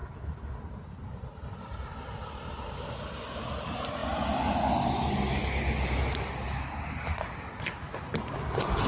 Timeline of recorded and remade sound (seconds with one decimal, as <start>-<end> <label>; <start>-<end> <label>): 0.0-8.9 recorded